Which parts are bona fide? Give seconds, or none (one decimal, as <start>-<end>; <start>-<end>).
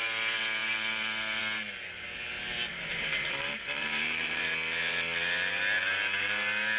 0.0-2.9; 4.4-6.8